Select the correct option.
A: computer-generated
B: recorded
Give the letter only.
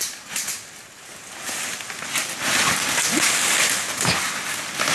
B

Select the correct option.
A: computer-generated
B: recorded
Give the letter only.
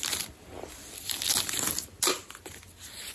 B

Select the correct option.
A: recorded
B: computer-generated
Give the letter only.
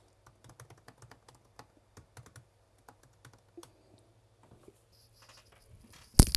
A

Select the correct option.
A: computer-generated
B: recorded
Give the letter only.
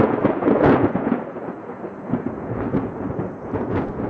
A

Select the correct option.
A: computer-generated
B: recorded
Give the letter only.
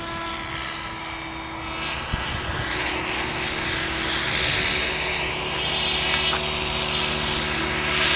B